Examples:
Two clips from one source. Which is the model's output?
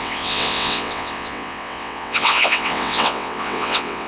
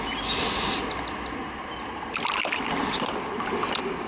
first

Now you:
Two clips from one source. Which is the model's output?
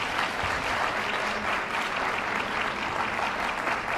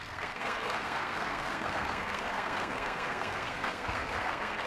second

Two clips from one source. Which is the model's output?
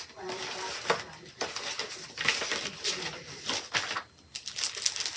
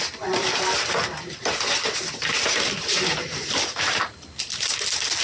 second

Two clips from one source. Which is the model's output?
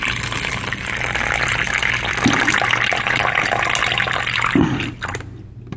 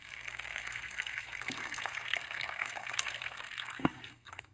second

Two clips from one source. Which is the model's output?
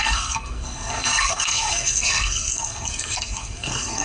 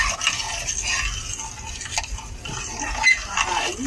first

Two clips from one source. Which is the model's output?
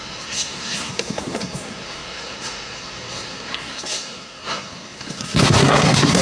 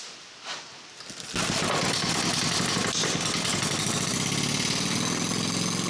first